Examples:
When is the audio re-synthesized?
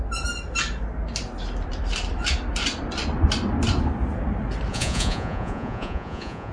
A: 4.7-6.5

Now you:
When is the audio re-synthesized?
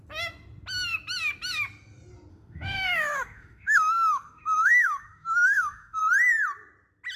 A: 2.3-6.0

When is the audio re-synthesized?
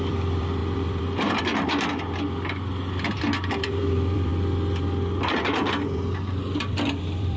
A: 0.0-4.3; 5.4-7.4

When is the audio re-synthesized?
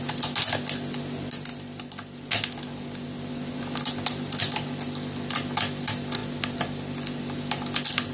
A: none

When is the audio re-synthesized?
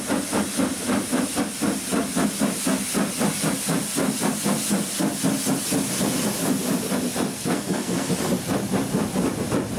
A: 7.3-8.1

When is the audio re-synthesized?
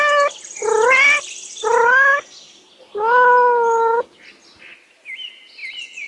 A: 5.6-6.1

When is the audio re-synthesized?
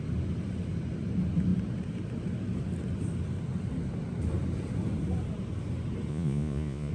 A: 6.1-6.9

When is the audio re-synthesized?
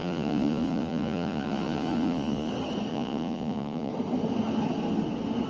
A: 0.0-2.5; 2.9-3.9